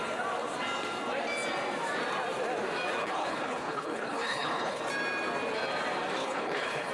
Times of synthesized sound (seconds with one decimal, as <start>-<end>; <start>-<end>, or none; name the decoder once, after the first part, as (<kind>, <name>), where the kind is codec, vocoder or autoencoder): 3.0-4.8 (codec, HILCodec); 6.2-6.9

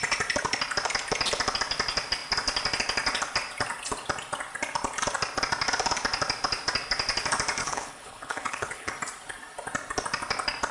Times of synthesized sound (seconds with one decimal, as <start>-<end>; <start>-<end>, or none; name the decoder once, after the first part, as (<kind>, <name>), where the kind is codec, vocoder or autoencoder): 7.6-8.9 (codec, HILCodec)

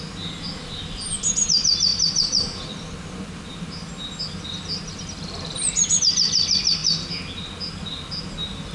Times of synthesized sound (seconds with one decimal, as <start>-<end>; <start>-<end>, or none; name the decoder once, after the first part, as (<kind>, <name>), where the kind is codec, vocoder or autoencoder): none

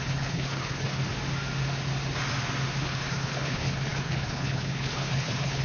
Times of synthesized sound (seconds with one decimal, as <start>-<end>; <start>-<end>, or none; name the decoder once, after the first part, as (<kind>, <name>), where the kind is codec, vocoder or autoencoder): 0.0-1.0 (codec, HILCodec); 2.8-5.6

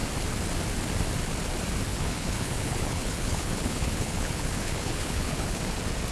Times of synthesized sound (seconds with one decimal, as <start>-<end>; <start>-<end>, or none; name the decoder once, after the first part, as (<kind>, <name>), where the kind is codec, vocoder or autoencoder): 1.9-5.6 (codec, HILCodec)

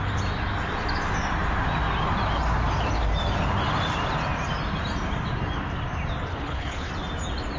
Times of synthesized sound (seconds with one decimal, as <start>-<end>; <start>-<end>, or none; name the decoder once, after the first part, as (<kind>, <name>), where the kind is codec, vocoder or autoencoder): 6.3-6.9 (codec, HILCodec)

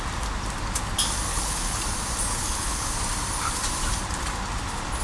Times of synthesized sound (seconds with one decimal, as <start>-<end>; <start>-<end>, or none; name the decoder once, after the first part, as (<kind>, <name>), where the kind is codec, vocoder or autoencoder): 1.3-1.8 (codec, HILCodec); 2.3-2.9

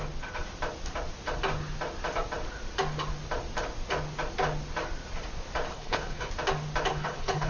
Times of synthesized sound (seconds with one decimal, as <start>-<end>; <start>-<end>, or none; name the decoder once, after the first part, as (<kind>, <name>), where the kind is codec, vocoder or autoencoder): 5.7-6.3 (codec, HILCodec); 6.9-7.5